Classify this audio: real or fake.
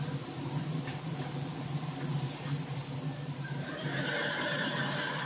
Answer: real